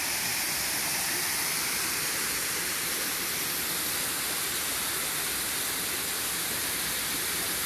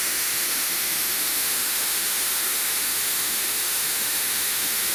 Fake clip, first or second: second